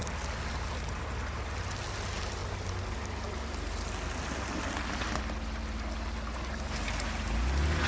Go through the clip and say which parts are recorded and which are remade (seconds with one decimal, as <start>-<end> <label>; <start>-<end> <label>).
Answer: 0.0-7.9 recorded